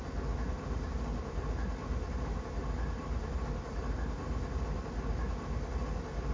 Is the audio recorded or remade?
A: recorded